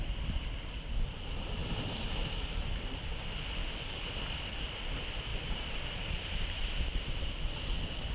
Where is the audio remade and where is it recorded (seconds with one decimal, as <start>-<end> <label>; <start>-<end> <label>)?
0.0-5.3 recorded; 5.3-7.2 remade; 7.2-8.1 recorded